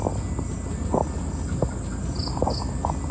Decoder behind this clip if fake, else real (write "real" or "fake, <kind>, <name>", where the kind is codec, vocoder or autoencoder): real